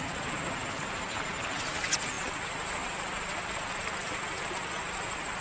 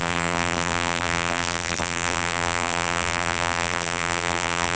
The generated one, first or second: second